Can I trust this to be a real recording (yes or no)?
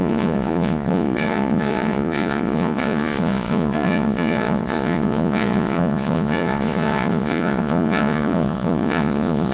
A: no